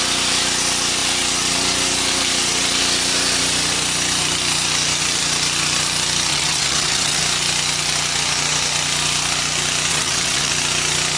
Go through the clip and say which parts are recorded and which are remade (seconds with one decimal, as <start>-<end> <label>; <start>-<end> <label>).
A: 0.0-6.3 recorded; 6.3-7.2 remade; 7.2-9.9 recorded; 9.9-10.5 remade; 10.5-11.2 recorded